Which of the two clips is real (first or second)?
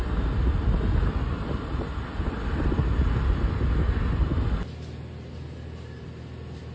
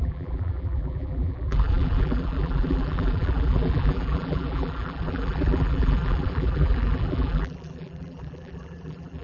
first